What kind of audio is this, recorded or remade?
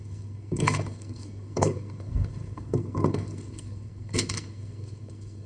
remade